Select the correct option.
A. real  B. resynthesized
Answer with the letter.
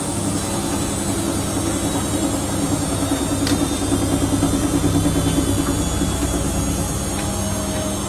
A